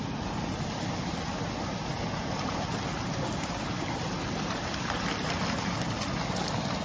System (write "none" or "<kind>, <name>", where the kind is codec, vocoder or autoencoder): none